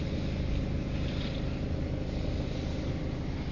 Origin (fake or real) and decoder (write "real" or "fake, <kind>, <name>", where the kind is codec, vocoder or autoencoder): real